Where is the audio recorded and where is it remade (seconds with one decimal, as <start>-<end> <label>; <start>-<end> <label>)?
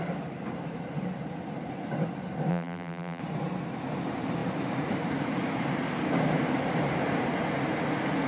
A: 0.0-2.5 recorded; 2.5-3.2 remade; 3.2-8.3 recorded